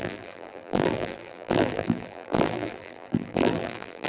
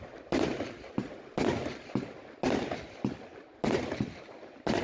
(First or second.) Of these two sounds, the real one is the second